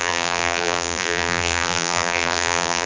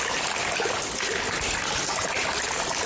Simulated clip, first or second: first